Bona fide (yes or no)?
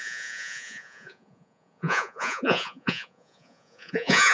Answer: no